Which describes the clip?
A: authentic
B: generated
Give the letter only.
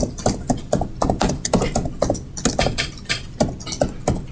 A